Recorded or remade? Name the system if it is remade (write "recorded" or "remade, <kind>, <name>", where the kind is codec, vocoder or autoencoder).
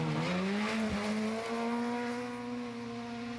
recorded